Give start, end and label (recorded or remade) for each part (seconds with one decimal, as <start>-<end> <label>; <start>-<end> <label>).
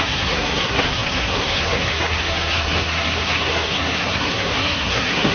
0.0-5.3 remade